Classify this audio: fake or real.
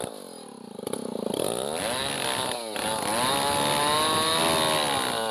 real